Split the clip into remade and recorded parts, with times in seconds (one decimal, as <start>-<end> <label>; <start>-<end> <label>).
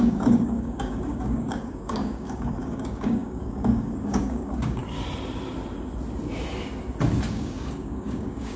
0.0-4.8 remade; 4.8-7.3 recorded; 7.3-8.6 remade